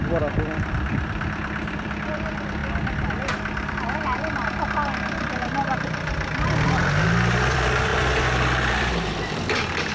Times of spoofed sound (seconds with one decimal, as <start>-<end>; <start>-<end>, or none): 0.0-2.6; 3.7-9.9